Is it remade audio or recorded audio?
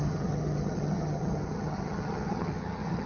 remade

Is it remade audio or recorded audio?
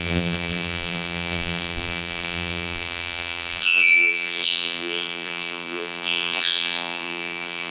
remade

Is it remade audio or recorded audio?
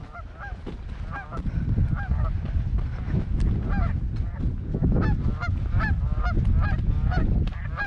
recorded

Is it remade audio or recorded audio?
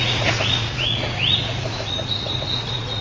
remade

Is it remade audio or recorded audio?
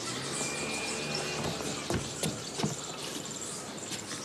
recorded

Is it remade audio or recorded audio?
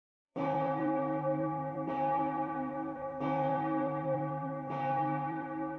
remade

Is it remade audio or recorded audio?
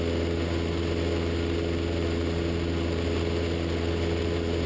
recorded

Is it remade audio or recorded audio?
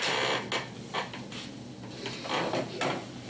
recorded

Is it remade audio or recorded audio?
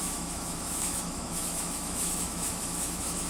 remade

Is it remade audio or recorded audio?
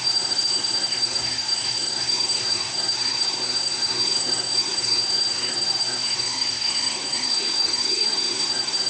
remade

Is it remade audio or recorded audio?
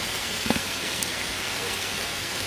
remade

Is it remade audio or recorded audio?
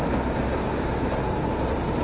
recorded